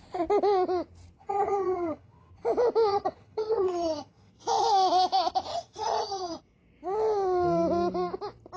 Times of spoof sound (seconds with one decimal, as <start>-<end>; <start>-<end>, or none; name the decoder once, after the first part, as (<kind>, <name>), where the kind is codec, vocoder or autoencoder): 1.2-2.3 (vocoder, HiFi-GAN); 2.9-4.3; 5.5-6.4